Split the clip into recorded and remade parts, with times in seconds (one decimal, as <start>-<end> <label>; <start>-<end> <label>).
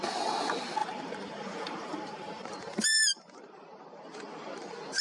0.0-0.8 recorded; 0.8-3.8 remade; 3.8-5.0 recorded